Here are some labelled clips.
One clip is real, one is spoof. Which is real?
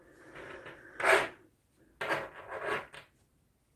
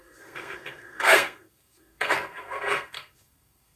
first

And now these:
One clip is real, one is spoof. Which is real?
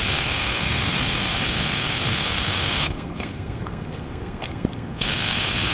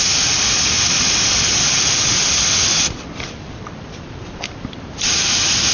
second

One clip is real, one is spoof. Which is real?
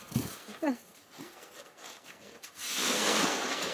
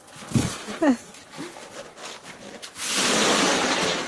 second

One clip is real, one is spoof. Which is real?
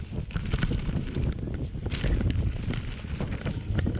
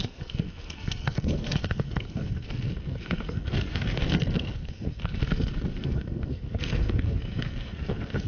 first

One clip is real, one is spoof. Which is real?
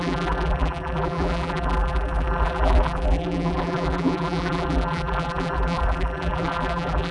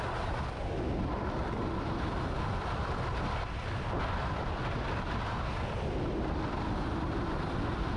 second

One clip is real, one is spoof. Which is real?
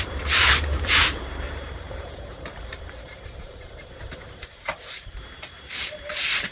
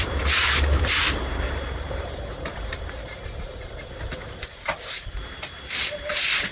second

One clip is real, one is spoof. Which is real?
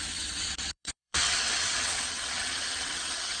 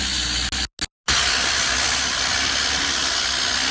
second